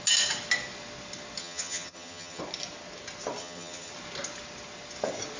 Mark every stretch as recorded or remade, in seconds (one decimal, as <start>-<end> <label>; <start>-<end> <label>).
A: 0.0-1.4 recorded; 1.4-2.4 remade; 2.4-3.4 recorded; 3.4-3.9 remade; 3.9-5.4 recorded